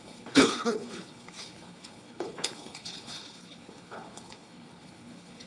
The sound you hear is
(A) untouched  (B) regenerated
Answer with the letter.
B